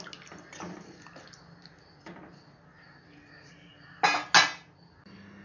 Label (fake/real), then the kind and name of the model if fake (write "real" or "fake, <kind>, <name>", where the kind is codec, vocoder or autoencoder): real